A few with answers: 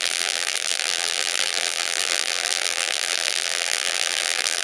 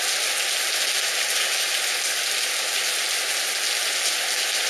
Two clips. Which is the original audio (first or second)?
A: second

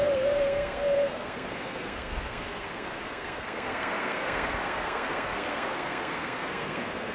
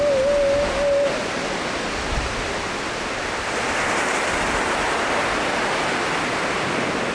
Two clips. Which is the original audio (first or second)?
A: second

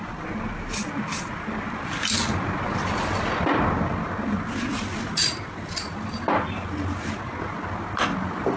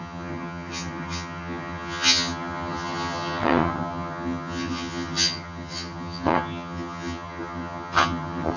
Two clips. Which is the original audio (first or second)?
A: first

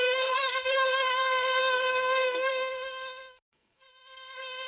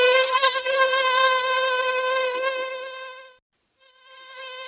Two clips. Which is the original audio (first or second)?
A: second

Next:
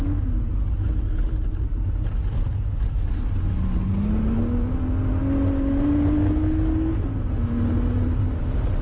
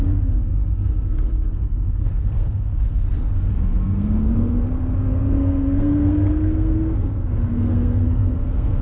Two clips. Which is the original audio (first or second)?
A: first